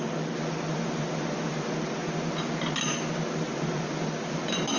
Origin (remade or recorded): recorded